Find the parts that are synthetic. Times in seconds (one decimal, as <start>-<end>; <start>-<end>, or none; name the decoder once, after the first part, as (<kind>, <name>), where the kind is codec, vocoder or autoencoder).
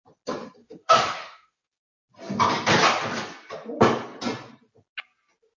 0.6-1.7 (autoencoder, DAC-VAE)